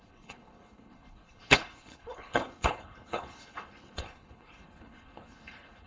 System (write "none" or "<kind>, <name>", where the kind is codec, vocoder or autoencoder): codec, HILCodec